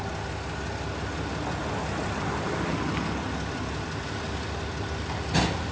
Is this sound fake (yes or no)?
no